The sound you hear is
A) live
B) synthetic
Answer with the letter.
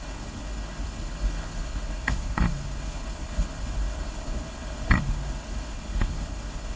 B